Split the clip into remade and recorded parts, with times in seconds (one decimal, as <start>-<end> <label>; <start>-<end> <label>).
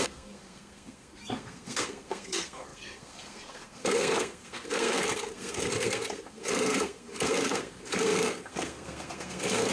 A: 0.0-9.7 remade